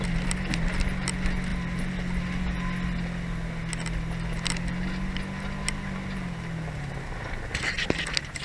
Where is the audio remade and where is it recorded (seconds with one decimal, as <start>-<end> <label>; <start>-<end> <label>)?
0.0-8.4 recorded